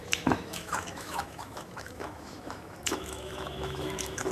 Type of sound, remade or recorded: remade